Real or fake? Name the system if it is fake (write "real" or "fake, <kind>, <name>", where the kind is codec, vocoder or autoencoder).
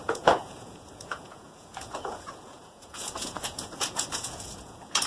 fake, vocoder, Vocos